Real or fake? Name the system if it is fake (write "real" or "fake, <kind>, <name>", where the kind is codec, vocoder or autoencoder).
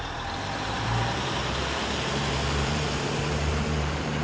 fake, vocoder, BigVGAN v2